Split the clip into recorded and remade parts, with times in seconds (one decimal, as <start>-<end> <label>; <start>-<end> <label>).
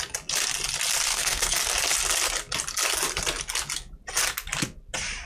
0.0-1.1 recorded; 1.1-1.6 remade; 1.6-5.3 recorded